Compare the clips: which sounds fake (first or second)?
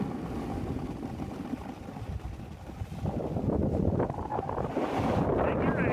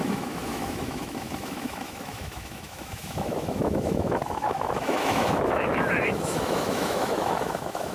second